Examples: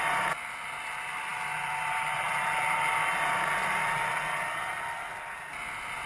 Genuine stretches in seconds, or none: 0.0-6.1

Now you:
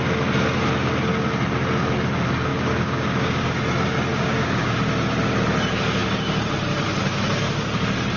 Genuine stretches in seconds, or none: 0.0-2.5; 3.6-4.1; 4.8-8.2

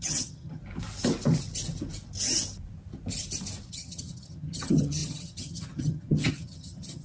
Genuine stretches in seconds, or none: 0.6-3.7

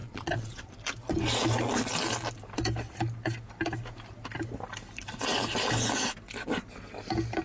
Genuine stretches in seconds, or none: 0.7-7.4